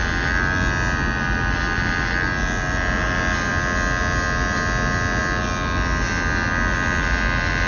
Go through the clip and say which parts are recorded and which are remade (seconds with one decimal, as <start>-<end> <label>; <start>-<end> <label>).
0.0-7.7 recorded